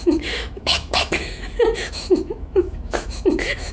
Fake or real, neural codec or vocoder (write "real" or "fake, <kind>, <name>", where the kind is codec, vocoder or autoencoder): fake, autoencoder, DAC-VAE